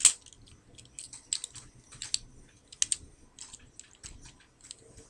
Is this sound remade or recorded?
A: recorded